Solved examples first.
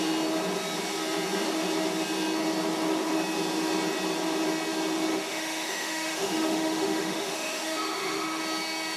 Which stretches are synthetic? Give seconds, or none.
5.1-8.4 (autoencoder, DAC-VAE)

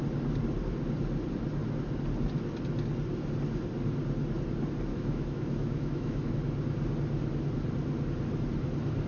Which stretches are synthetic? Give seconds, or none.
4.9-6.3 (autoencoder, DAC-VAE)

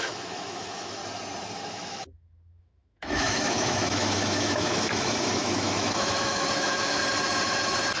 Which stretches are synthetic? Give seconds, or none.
0.0-1.0 (autoencoder, DAC-VAE); 1.7-7.0

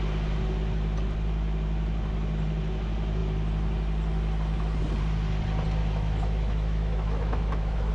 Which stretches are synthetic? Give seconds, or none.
5.8-7.9 (autoencoder, DAC-VAE)